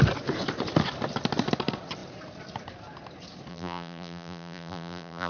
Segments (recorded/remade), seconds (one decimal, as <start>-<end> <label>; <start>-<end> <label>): 0.0-3.5 recorded; 3.5-5.3 remade